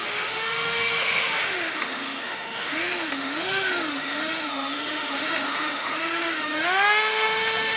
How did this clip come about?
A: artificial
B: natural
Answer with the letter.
A